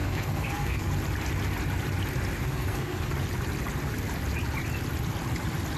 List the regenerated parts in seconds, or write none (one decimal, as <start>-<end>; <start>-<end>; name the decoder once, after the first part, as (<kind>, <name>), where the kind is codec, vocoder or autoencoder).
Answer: 0.0-0.9 (codec, SNAC); 2.4-3.1